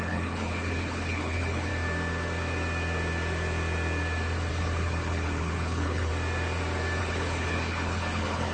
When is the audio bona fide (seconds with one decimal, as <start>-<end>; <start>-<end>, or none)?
1.7-4.5; 6.1-7.0